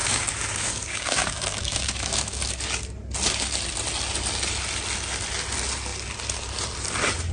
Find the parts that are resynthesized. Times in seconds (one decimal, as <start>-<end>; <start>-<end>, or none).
0.0-2.4